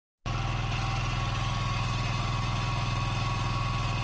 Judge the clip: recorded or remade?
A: recorded